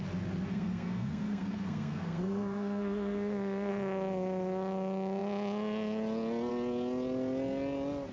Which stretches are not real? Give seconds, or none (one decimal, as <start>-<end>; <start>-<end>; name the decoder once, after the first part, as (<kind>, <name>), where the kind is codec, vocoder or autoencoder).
0.5-3.7 (codec, SNAC)